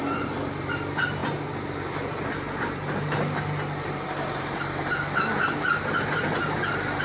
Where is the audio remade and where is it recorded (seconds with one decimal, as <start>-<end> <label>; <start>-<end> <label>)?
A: 0.0-7.0 recorded